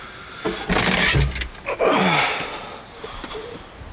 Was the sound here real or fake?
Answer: real